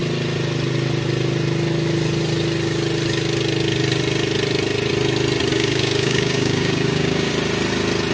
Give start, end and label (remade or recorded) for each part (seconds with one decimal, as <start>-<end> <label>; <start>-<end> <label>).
0.0-5.5 recorded; 5.5-7.3 remade; 7.3-8.1 recorded